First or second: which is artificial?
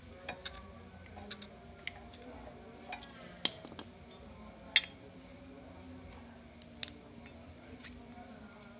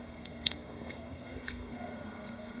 second